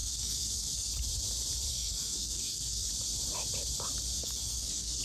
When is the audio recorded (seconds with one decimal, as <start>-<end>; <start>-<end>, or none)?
0.9-1.7; 2.9-4.2